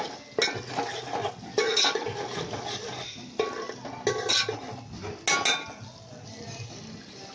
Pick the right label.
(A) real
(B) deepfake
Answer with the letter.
A